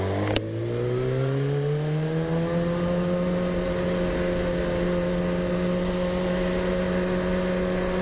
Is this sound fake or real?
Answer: real